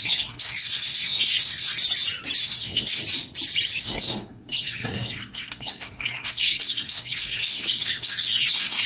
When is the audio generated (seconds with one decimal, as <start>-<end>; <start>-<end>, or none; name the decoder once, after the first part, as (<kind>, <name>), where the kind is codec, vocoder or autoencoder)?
0.0-1.8 (codec, SNAC); 2.4-3.0; 3.8-8.9